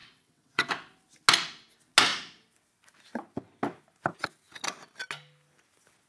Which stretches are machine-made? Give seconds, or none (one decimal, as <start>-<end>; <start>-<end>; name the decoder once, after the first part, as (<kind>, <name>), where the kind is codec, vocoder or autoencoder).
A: 0.0-0.7 (vocoder, WaveNeXt)